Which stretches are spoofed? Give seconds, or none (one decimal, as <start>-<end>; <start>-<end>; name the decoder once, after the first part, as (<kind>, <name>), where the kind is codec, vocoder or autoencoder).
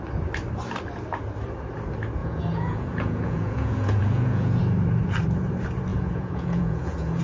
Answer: 2.2-4.6 (vocoder, Vocos); 5.9-7.2